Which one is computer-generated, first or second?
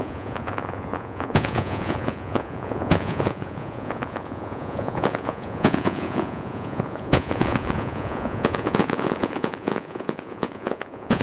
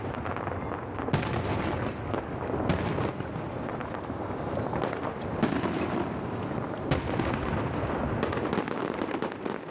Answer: first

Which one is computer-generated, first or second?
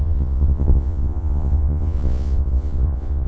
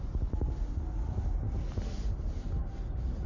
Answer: first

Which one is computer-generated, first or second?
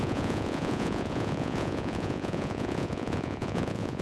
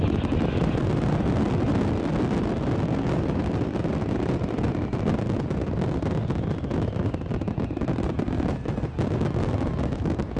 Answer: first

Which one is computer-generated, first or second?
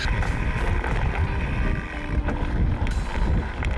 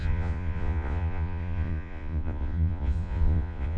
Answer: second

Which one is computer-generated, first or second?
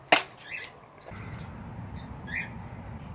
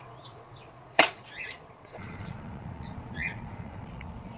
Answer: second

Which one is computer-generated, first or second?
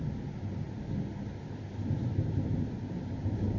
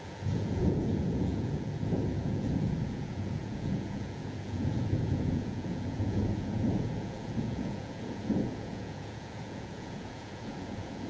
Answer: second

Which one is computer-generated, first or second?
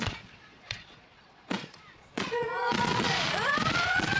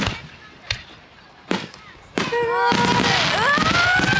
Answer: first